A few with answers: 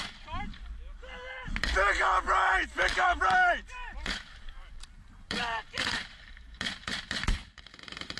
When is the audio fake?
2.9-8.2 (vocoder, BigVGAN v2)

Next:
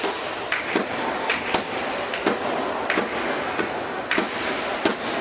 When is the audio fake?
none

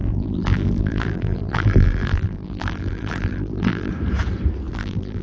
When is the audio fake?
0.0-3.9 (vocoder, BigVGAN v2); 4.7-5.2

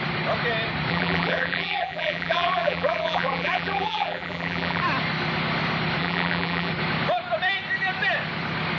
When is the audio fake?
0.9-4.8 (vocoder, BigVGAN v2); 6.0-6.7

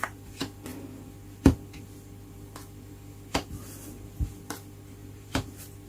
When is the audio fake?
5.0-5.5 (vocoder, BigVGAN v2)

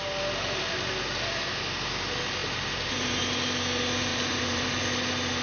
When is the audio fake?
2.4-3.2 (vocoder, BigVGAN v2); 4.1-4.8

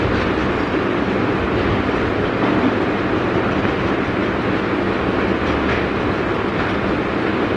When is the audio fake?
none